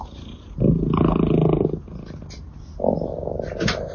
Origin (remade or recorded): recorded